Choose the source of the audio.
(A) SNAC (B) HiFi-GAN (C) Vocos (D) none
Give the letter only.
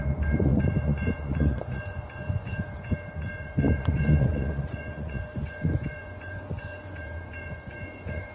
C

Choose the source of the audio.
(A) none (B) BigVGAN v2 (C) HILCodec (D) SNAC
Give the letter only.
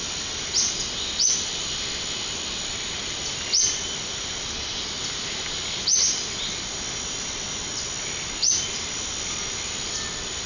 A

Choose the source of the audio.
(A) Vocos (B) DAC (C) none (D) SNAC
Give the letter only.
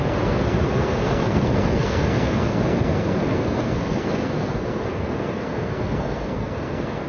D